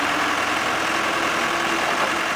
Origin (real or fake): real